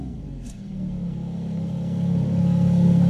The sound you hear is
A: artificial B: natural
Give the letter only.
A